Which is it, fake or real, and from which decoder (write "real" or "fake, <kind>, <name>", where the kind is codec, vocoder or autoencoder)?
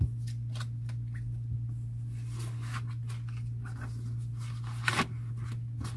real